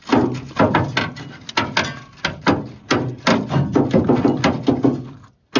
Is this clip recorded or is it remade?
recorded